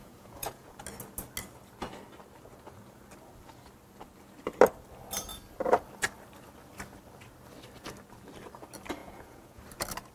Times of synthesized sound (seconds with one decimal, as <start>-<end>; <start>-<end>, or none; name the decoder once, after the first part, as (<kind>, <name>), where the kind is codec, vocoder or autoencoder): 0.0-0.8 (vocoder, Vocos); 9.0-9.6